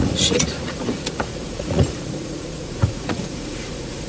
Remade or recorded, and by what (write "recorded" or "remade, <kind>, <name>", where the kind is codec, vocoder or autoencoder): remade, vocoder, Vocos